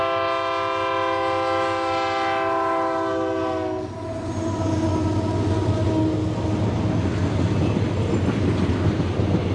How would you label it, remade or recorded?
recorded